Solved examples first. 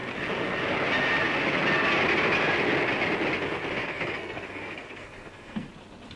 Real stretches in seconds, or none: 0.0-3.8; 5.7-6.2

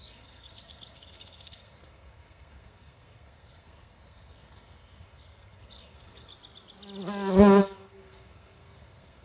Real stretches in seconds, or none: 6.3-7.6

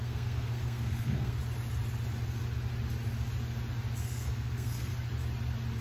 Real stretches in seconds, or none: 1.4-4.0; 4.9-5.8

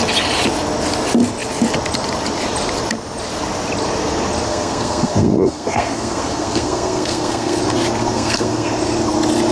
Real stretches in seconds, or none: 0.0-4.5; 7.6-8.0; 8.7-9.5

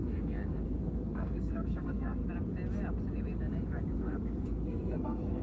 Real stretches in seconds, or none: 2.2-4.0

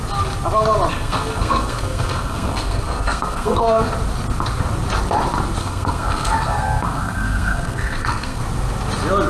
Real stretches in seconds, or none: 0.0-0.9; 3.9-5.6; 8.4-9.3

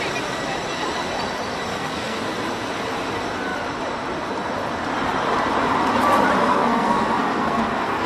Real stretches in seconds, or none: 0.0-1.7; 2.2-6.5

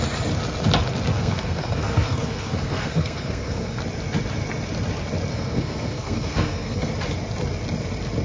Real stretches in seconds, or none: 0.0-1.1; 3.8-5.3; 6.9-8.2